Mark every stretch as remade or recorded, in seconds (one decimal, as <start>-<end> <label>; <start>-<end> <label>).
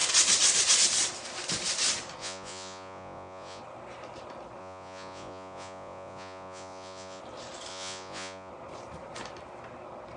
0.0-2.2 recorded; 2.2-3.6 remade; 3.6-4.6 recorded; 4.6-7.2 remade; 7.2-7.7 recorded; 7.7-8.5 remade; 8.5-10.2 recorded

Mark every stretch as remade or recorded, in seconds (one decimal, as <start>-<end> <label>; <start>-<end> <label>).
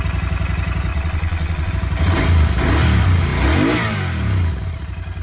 0.0-0.9 recorded; 0.9-1.7 remade; 1.7-5.2 recorded